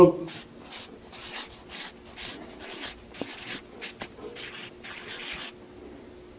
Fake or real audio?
real